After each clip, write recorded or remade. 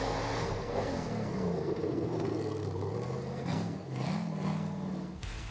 remade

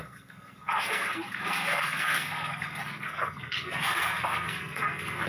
remade